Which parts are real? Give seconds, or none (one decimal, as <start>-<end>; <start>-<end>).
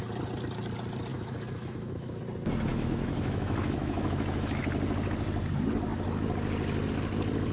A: 0.0-1.1; 2.2-2.7; 4.6-7.5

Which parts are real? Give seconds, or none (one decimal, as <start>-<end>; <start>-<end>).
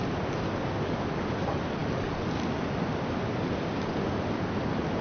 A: 0.0-5.0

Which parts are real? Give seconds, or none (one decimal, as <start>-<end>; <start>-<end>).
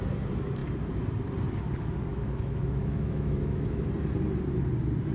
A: 0.0-2.1; 3.9-5.1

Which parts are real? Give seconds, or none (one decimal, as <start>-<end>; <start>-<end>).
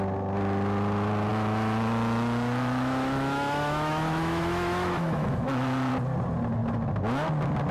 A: 0.0-1.3; 5.9-7.7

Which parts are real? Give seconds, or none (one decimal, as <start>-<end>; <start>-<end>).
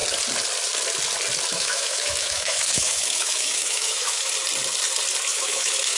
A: 0.0-1.5; 4.3-5.3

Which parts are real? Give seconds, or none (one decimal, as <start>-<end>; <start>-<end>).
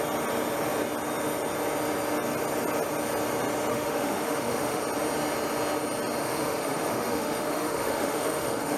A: 0.0-3.7; 4.8-6.2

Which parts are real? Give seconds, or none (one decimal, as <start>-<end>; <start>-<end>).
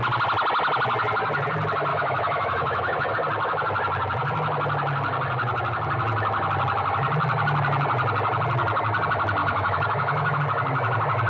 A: 0.0-1.9; 3.1-9.4; 10.4-11.3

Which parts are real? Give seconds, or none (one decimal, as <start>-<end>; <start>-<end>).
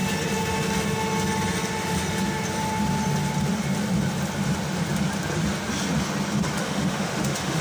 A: 0.0-6.6